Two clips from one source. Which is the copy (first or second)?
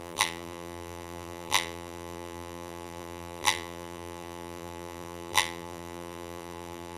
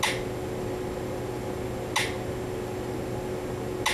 first